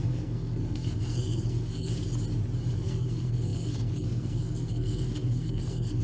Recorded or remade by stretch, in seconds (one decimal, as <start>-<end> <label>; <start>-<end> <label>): 0.0-1.9 remade; 1.9-2.7 recorded; 2.7-6.0 remade